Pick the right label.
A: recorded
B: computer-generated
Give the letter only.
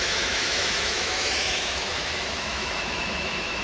B